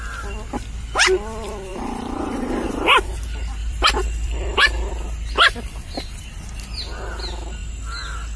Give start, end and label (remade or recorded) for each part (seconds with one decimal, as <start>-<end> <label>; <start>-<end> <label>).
0.0-1.7 recorded; 1.7-3.0 remade; 3.0-3.6 recorded; 3.6-4.9 remade; 4.9-8.4 recorded